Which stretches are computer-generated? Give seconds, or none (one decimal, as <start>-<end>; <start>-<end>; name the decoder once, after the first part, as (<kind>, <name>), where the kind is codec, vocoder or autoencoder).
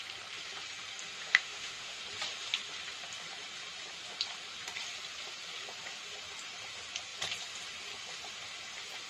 1.1-2.0 (autoencoder, DAC-VAE)